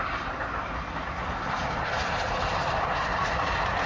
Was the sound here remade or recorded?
recorded